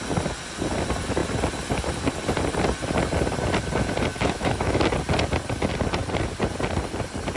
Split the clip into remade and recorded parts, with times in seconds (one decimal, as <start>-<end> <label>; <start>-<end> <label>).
0.0-4.1 recorded; 4.1-4.8 remade; 4.8-7.4 recorded